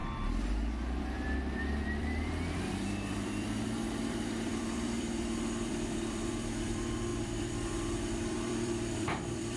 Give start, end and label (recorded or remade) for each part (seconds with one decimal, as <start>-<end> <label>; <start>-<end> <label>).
0.0-1.0 recorded; 1.0-9.6 remade